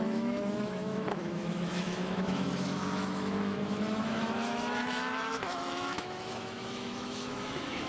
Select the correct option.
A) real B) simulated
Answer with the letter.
B